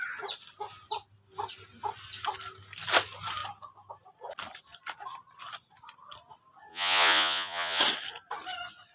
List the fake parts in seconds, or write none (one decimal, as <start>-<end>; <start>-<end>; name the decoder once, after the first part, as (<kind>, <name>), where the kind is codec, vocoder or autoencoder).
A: 6.7-7.8 (vocoder, Vocos)